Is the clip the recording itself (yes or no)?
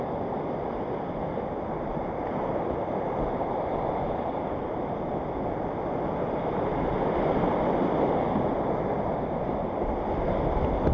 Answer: yes